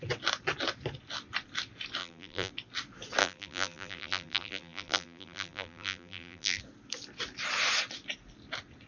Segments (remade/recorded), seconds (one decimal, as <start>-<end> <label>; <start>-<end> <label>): 0.0-2.0 recorded; 2.0-2.5 remade; 2.5-3.2 recorded; 3.2-6.6 remade; 6.6-8.9 recorded